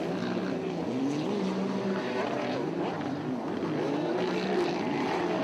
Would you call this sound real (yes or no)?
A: yes